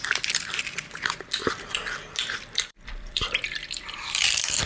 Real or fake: fake